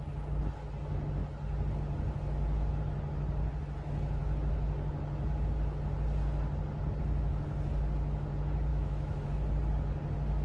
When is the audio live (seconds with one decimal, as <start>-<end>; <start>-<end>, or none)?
0.0-8.7; 9.3-10.4